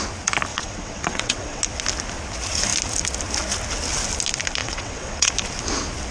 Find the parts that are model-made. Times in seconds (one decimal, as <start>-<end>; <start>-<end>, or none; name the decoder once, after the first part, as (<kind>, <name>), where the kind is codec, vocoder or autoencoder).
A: 0.5-1.6 (vocoder, WaveNeXt); 4.6-5.3